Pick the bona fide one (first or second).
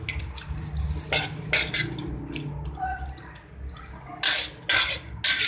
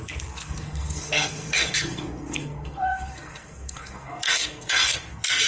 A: first